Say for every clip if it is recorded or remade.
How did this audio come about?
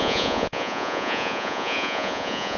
remade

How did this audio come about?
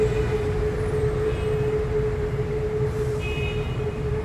recorded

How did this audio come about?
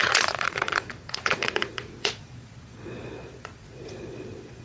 remade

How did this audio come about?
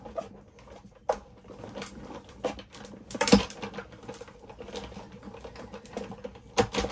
recorded